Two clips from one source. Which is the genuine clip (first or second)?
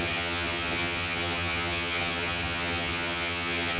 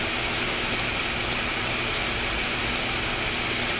second